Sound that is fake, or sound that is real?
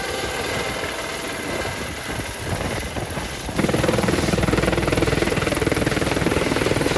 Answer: real